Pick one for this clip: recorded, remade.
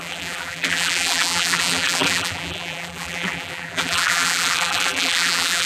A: remade